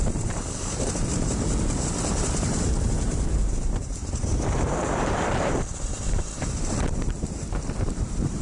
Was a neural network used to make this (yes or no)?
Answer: yes